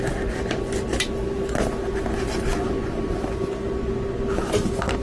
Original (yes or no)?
yes